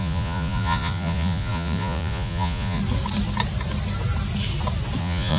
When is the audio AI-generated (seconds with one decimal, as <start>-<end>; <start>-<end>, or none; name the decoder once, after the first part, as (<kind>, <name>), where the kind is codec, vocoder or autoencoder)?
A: 0.0-2.8 (vocoder, Vocos); 5.0-5.4